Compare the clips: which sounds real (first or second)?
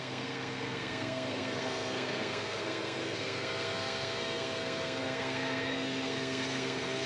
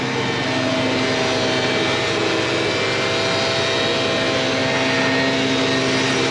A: second